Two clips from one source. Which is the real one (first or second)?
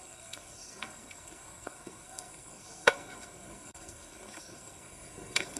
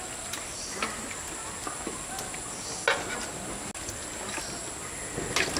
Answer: second